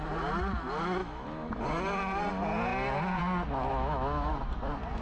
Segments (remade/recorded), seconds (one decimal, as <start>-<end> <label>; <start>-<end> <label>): 0.0-1.0 recorded; 1.0-1.5 remade; 1.5-3.7 recorded; 3.7-4.3 remade; 4.3-5.0 recorded